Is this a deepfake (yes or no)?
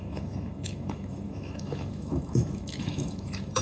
yes